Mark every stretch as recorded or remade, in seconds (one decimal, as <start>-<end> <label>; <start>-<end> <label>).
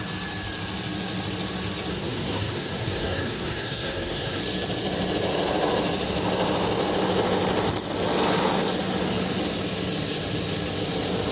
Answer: 0.0-1.9 recorded; 1.9-4.4 remade; 4.4-11.3 recorded